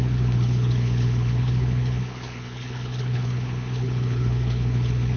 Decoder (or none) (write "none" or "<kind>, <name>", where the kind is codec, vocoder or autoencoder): codec, HILCodec